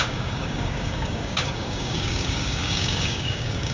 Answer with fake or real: fake